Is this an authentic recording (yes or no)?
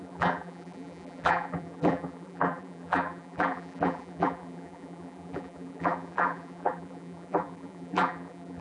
no